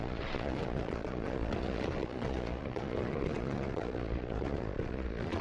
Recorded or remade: remade